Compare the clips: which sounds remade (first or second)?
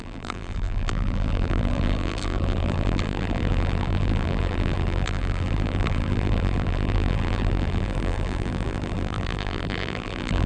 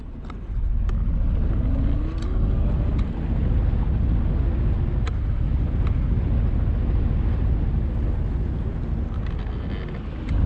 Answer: first